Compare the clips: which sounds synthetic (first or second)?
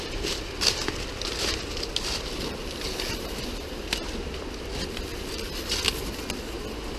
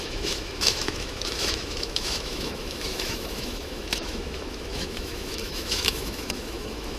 second